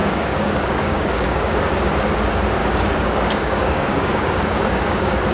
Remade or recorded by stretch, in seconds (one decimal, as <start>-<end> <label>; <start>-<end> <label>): 0.0-1.9 remade; 1.9-2.6 recorded; 2.6-5.3 remade